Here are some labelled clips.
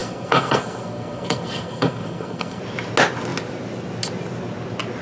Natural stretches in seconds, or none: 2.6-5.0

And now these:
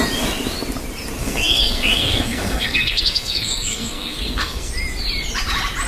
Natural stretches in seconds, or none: 0.0-1.2; 4.7-5.9